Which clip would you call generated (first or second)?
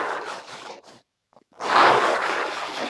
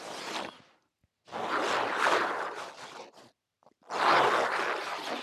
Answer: first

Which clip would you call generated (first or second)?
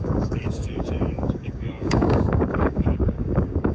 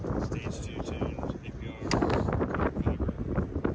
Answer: first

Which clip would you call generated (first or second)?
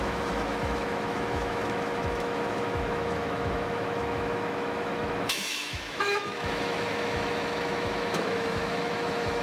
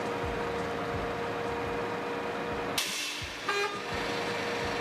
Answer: first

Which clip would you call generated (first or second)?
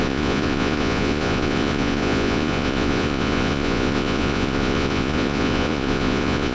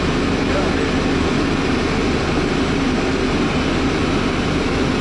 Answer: first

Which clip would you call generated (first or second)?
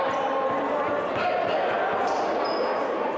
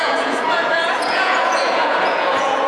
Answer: second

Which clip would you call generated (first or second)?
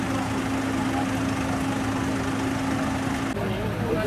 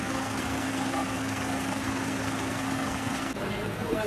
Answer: second